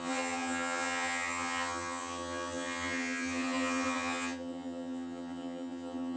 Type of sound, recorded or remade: remade